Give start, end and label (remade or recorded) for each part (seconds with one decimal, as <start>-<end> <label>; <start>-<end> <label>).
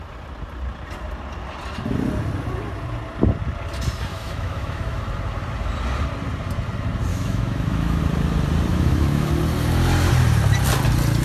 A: 0.0-4.1 recorded; 4.1-5.0 remade; 5.0-7.1 recorded; 7.1-8.0 remade; 8.0-8.7 recorded; 8.7-9.3 remade; 9.3-11.2 recorded